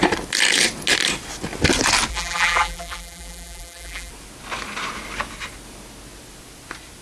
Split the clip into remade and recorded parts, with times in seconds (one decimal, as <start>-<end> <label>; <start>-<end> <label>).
0.0-2.1 recorded; 2.1-4.1 remade; 4.1-7.0 recorded